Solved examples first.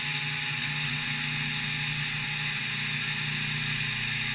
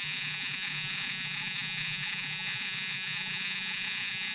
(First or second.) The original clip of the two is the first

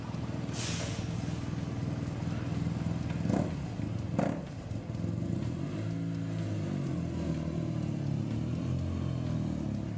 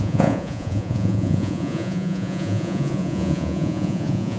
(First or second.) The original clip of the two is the first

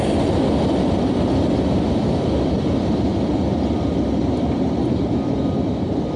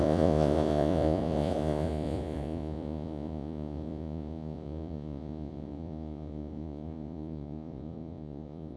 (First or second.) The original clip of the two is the first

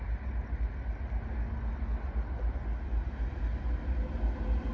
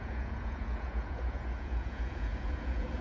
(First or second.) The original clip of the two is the first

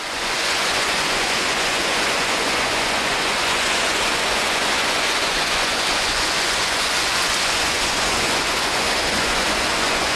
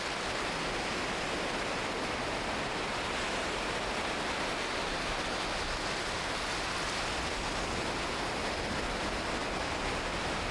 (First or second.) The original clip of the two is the second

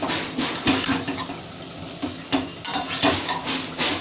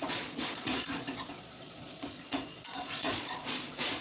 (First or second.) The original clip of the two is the first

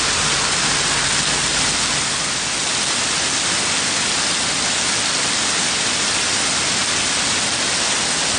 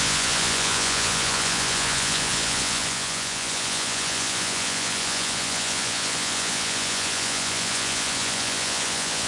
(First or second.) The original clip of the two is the first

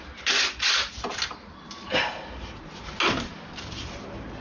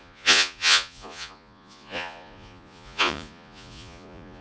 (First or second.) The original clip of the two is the first